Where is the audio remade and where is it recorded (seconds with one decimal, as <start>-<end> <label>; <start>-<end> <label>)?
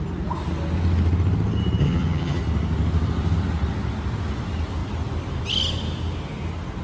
0.0-1.8 recorded; 1.8-2.4 remade; 2.4-6.8 recorded